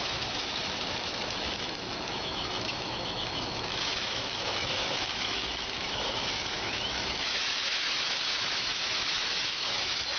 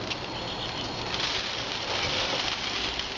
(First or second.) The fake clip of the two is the first